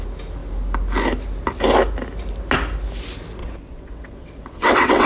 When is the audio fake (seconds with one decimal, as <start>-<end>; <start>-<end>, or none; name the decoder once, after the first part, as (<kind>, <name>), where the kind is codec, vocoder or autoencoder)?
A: 3.4-5.1 (vocoder, WaveNeXt)